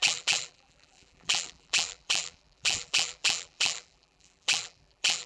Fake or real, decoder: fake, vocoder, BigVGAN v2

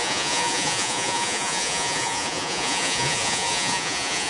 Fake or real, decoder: fake, vocoder, Vocos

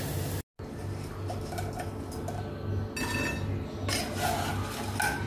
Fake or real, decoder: real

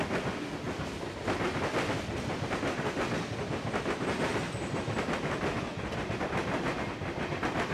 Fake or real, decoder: real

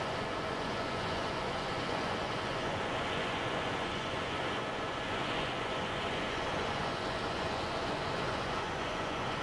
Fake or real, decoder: fake, vocoder, Vocos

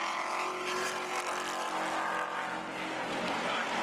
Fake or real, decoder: real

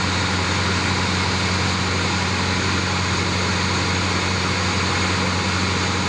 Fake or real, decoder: real